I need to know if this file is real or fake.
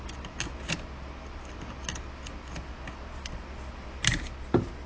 real